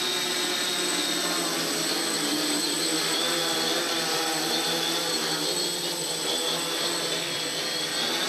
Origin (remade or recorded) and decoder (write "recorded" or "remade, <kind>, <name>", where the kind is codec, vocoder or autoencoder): recorded